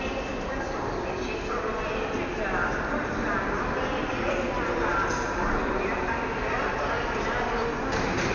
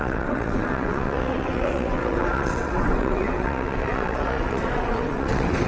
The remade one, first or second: second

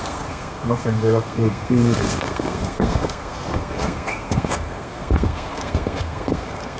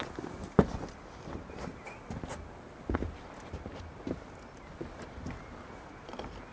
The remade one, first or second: first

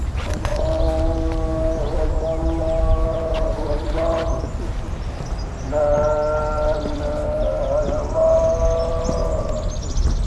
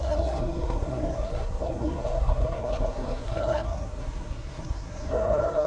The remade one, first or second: second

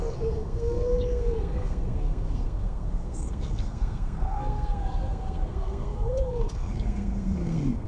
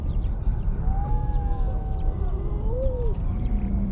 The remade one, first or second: first